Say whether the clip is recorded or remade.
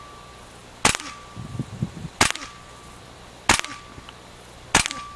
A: recorded